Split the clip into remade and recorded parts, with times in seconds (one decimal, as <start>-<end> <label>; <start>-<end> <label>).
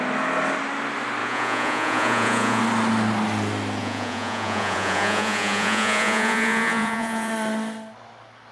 0.0-1.2 recorded; 1.2-2.6 remade; 2.6-3.8 recorded; 3.8-7.3 remade; 7.3-8.5 recorded